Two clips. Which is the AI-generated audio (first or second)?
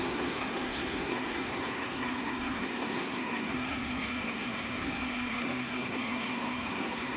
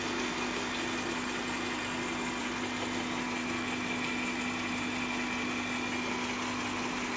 first